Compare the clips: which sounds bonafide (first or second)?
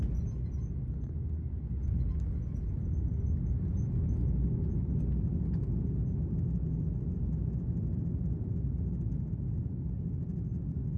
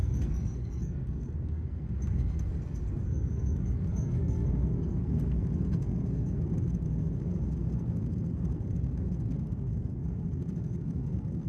first